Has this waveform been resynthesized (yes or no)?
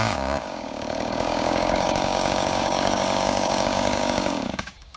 yes